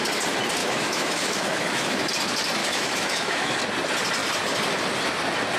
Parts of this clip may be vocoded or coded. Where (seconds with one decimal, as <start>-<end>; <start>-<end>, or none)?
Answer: 0.6-2.1; 2.6-3.6